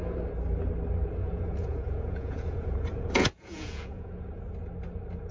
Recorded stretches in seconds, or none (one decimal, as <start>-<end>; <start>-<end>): 0.0-1.2; 4.4-5.3